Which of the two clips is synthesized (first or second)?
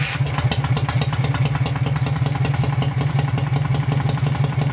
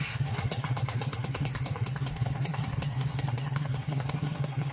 second